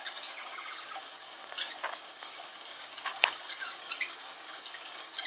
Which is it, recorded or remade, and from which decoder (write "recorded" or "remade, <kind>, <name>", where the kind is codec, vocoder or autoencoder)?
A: remade, codec, DAC